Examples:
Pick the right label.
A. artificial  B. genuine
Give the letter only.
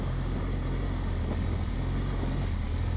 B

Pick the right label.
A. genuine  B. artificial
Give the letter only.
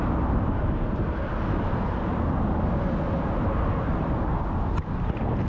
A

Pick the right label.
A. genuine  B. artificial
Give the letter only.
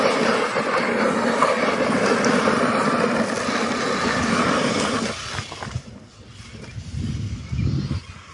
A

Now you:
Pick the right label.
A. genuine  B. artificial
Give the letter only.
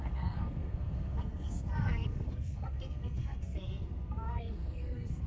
B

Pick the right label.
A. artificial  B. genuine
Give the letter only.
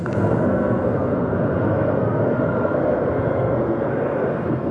A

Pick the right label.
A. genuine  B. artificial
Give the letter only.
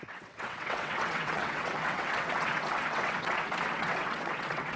B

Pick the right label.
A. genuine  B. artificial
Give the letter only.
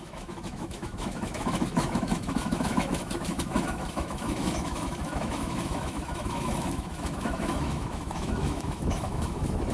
B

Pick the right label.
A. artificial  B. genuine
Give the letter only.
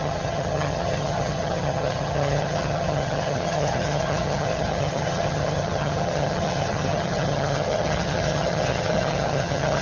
A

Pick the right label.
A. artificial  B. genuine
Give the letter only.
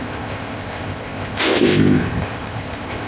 A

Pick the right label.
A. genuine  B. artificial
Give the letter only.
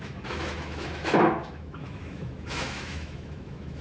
B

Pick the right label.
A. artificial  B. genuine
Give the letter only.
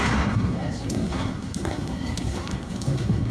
A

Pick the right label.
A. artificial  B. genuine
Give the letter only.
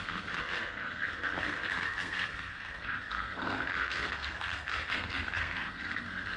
A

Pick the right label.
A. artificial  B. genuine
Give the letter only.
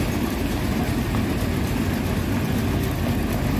B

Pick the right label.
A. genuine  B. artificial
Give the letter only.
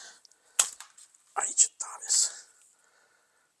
A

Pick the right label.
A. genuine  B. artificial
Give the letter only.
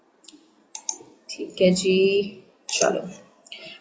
A